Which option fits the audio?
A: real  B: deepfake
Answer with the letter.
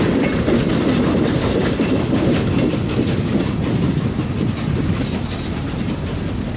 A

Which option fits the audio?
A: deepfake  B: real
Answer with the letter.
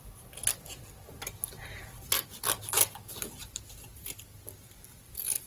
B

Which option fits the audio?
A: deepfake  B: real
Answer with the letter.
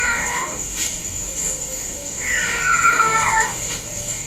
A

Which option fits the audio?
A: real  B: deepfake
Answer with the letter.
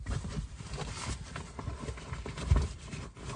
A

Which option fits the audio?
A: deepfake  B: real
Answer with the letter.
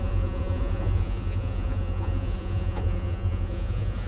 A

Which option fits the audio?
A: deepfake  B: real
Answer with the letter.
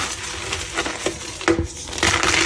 B